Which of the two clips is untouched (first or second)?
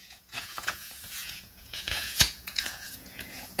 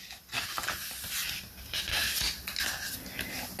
second